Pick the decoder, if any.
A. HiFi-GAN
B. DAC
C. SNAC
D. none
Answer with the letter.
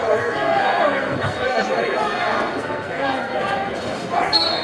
C